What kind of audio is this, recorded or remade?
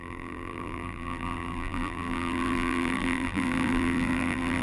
remade